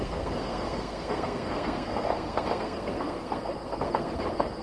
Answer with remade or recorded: remade